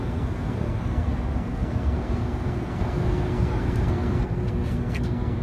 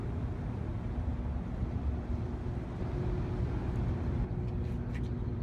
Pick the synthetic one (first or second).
first